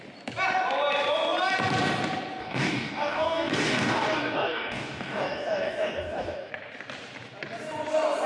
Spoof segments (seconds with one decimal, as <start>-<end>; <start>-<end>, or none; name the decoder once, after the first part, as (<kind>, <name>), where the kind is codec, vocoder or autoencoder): 2.4-6.5 (codec, DAC)